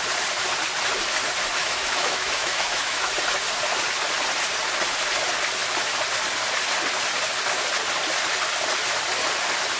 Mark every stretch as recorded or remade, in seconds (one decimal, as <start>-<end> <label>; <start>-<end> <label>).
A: 0.0-1.6 recorded; 1.6-3.1 remade; 3.1-9.8 recorded